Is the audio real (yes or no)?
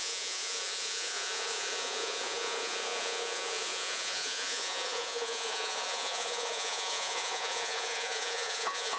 no